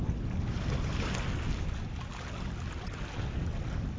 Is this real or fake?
real